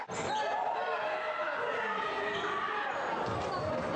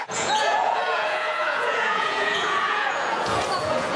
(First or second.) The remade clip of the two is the second